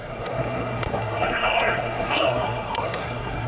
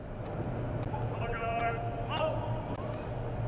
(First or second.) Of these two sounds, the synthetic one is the first